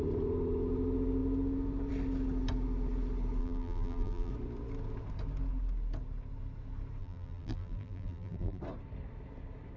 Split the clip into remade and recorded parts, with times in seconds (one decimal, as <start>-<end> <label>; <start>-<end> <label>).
0.0-3.4 recorded; 3.4-4.3 remade; 4.3-7.0 recorded; 7.0-8.6 remade; 8.6-9.8 recorded